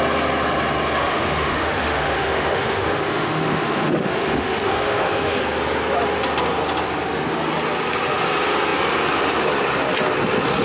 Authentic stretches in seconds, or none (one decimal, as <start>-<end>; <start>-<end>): 0.0-1.0; 5.4-10.6